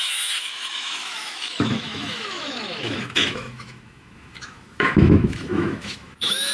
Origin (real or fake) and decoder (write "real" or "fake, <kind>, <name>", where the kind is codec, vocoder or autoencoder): fake, autoencoder, DAC-VAE